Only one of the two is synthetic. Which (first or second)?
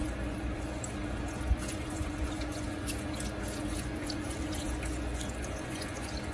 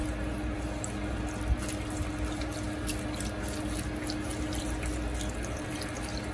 first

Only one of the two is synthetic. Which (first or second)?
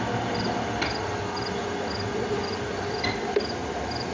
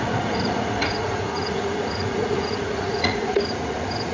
second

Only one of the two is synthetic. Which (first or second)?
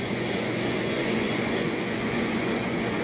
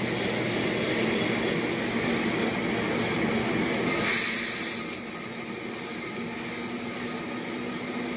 first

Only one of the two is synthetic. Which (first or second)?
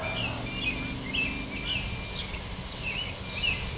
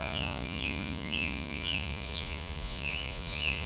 second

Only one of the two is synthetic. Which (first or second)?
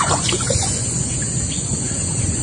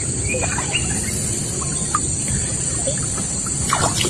first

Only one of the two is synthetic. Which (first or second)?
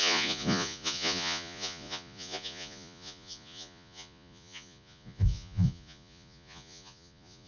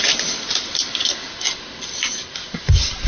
first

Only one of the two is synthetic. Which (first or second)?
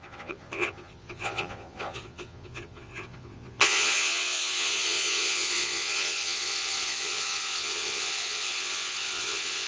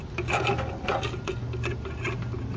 first